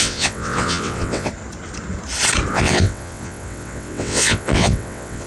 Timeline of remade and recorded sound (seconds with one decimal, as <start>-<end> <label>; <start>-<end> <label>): 0.0-1.3 remade; 1.3-2.5 recorded; 2.5-5.3 remade